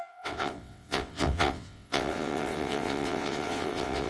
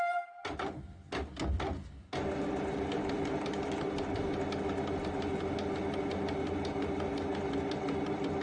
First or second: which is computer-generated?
first